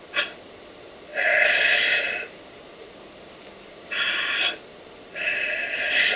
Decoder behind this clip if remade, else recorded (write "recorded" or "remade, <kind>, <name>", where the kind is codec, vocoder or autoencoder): recorded